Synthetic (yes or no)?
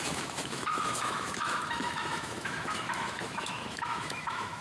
yes